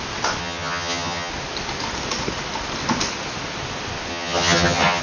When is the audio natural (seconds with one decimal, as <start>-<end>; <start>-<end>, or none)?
0.0-0.4; 1.3-4.1